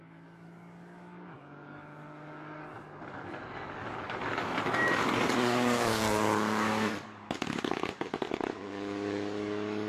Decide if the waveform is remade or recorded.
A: remade